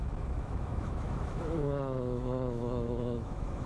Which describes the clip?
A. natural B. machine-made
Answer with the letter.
B